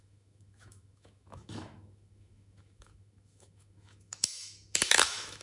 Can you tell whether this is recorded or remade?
remade